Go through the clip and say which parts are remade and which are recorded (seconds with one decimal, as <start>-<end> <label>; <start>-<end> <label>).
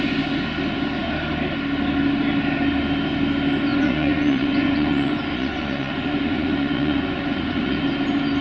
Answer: 0.0-3.7 recorded; 3.7-7.8 remade; 7.8-8.4 recorded